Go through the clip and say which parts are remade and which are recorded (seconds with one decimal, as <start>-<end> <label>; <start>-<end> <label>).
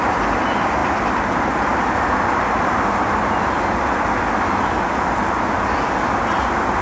0.0-6.8 recorded